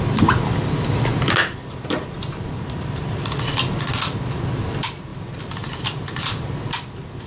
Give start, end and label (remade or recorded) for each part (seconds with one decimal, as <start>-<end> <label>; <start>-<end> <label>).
0.0-1.6 recorded; 1.6-3.1 remade; 3.1-5.1 recorded; 5.1-6.2 remade; 6.2-7.3 recorded